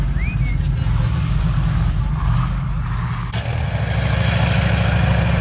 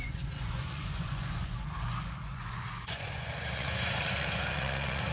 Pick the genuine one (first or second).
first